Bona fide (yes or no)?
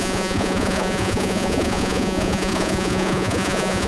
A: no